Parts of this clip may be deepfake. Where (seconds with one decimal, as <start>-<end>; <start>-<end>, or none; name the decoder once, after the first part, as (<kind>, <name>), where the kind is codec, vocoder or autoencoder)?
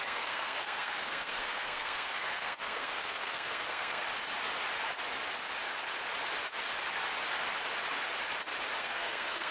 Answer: 0.0-4.0 (codec, SNAC); 8.8-9.5